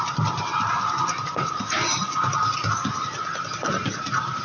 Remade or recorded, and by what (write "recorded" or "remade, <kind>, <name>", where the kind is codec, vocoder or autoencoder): recorded